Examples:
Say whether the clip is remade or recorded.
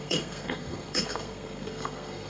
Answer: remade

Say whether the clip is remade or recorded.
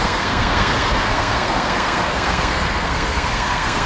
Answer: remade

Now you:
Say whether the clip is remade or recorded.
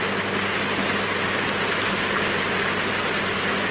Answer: recorded